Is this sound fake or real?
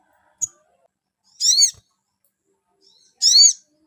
real